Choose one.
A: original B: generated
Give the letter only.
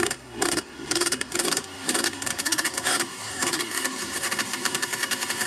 B